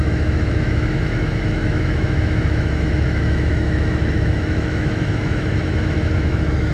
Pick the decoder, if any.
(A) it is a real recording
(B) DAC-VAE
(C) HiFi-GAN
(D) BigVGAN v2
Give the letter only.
B